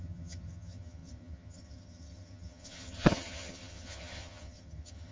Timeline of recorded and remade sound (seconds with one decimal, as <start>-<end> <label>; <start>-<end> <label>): 0.0-5.1 remade